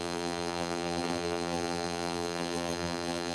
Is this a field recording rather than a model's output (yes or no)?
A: no